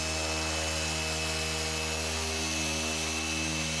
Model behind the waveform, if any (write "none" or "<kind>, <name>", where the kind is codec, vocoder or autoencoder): none